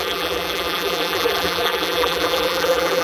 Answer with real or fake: fake